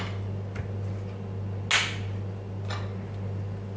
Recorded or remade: recorded